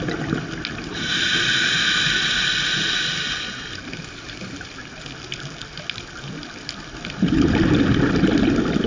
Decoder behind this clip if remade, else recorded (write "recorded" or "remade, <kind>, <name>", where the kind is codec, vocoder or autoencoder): recorded